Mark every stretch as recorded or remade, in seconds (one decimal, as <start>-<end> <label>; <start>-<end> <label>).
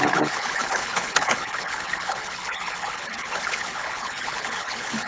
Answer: 0.0-5.1 remade